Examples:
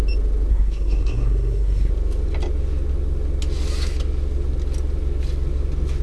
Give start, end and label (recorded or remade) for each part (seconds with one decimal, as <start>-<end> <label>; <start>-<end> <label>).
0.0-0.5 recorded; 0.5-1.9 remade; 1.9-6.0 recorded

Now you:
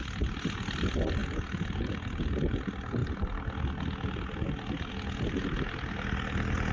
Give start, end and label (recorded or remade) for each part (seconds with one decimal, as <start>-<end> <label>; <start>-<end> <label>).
0.0-6.7 recorded

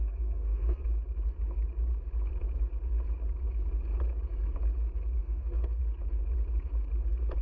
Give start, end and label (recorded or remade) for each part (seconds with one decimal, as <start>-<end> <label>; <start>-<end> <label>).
0.0-0.8 remade; 0.8-5.2 recorded; 5.2-5.8 remade; 5.8-7.4 recorded

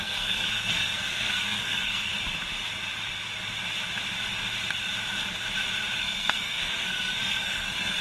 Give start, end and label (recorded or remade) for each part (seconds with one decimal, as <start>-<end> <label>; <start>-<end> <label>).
0.0-2.1 remade; 2.1-6.0 recorded; 6.0-8.0 remade